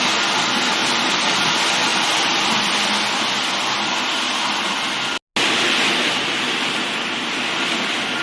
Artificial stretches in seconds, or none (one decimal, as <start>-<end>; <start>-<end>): 0.8-1.5

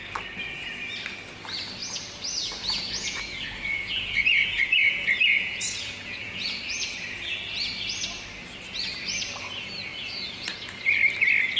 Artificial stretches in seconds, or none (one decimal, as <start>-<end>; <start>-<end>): 1.8-6.6; 9.9-10.6

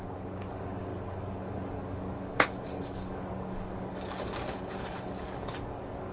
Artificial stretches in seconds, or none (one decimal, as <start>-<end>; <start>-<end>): 0.0-6.1

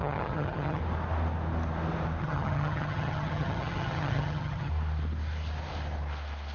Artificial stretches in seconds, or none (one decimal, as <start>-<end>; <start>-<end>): 0.0-0.8; 2.2-4.7

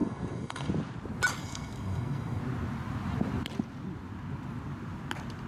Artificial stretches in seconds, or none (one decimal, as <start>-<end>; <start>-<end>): 0.0-0.7; 1.4-2.4

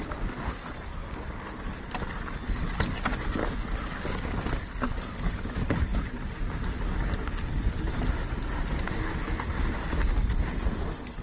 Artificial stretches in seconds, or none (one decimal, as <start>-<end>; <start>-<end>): 3.4-5.3

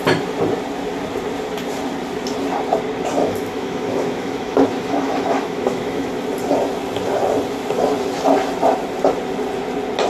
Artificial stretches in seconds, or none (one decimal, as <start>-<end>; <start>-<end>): 3.2-6.1

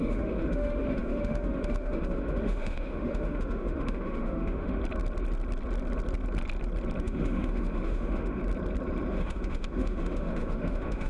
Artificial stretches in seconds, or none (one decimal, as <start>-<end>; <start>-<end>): 0.0-4.8; 7.0-8.4; 9.1-11.1